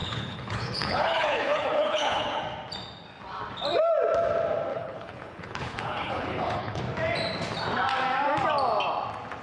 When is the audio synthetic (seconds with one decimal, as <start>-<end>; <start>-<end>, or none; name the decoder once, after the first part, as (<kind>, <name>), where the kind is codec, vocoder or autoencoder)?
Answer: 0.0-2.4 (codec, HILCodec); 4.7-6.8